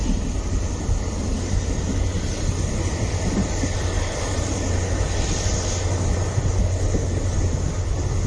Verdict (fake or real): real